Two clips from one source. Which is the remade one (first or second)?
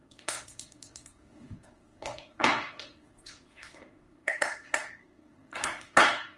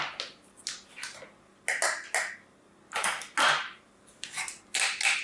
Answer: first